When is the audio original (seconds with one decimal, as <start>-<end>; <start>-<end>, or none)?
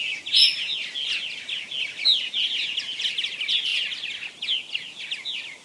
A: 0.0-5.6